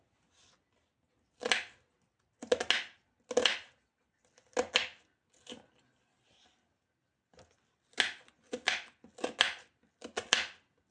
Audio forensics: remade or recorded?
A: recorded